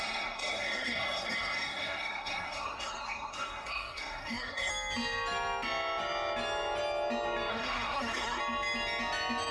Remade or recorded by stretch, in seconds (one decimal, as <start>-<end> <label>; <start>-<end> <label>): 0.0-4.7 remade; 4.7-7.5 recorded; 7.5-8.4 remade; 8.4-9.5 recorded